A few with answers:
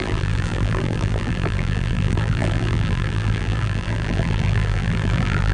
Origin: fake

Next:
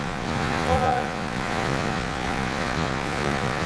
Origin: fake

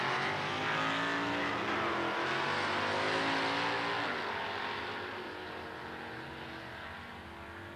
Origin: real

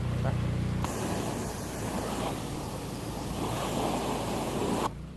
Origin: real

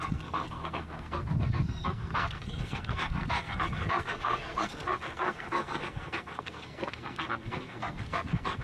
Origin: fake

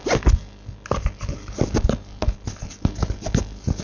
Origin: real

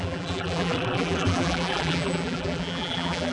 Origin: fake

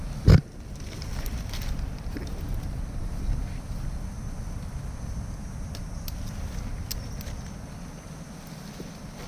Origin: real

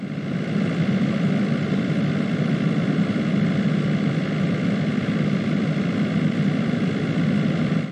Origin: fake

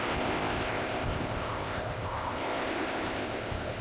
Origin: fake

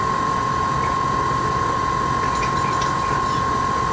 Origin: real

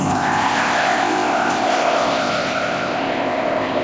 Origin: fake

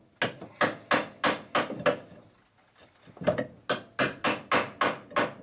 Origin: real